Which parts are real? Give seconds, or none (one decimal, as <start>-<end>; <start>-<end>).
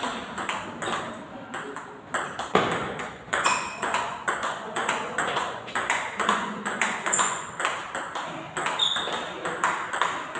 0.0-2.8; 7.5-10.4